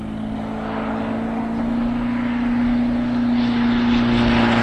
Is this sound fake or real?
real